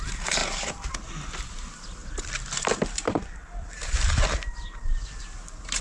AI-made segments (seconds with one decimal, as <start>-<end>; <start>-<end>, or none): 0.4-0.9; 2.0-4.2